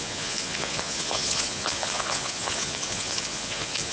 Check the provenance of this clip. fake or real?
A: fake